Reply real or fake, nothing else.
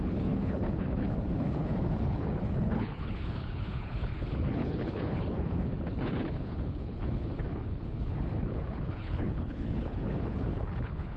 fake